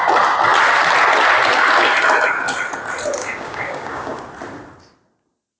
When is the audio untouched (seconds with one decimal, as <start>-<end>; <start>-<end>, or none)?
0.0-3.2; 4.2-5.6